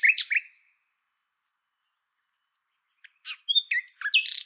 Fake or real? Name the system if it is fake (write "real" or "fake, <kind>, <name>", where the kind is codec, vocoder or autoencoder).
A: real